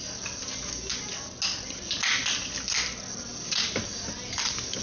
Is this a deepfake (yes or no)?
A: no